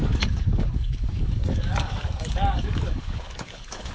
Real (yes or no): no